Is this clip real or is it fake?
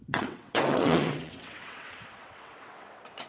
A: fake